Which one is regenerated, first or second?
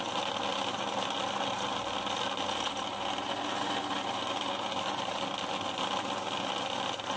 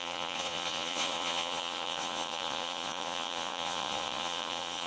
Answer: second